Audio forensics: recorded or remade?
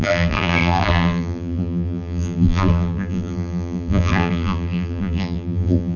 remade